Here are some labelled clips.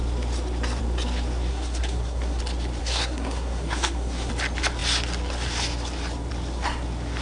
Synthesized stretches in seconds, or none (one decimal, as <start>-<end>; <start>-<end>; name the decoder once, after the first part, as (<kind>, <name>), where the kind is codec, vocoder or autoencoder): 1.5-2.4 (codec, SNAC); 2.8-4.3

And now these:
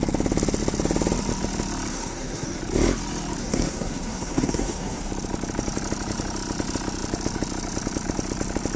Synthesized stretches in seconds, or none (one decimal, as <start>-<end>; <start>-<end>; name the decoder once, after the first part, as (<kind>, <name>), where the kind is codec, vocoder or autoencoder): 1.9-2.6 (codec, SNAC); 3.4-5.1

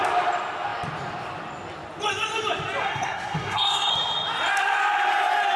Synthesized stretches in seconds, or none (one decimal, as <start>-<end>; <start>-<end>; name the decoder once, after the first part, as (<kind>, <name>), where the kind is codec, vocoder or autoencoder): 2.8-3.9 (codec, SNAC)

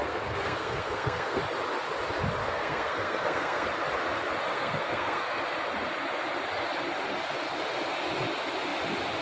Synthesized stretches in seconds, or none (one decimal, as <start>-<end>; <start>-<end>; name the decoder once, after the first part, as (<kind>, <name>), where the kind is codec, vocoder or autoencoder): 0.0-1.4 (codec, SNAC); 2.4-3.7; 4.5-5.4

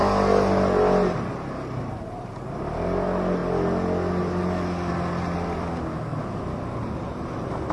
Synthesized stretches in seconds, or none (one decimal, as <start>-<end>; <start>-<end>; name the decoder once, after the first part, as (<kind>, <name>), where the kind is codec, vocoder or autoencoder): none

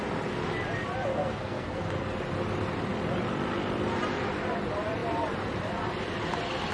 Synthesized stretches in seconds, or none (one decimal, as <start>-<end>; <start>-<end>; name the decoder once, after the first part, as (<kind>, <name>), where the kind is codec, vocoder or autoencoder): 1.1-1.8 (codec, SNAC)

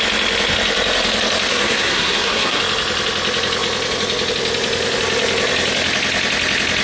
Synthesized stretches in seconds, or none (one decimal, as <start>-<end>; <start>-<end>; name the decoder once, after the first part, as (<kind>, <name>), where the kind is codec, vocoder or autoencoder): 1.5-2.6 (codec, SNAC)

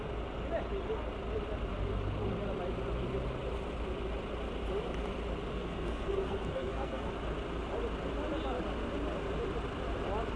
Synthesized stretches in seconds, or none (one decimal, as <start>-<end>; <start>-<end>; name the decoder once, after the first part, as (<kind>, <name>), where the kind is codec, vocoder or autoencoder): 5.5-7.1 (codec, SNAC)